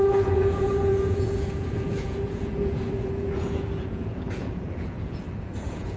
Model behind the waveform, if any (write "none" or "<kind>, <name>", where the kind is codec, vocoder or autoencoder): vocoder, Vocos